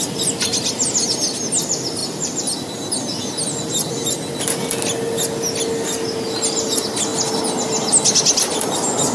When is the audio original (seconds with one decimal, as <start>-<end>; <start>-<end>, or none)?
0.0-9.1